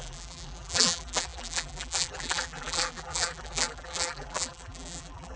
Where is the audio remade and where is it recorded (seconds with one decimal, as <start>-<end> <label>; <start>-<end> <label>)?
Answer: 0.0-5.4 remade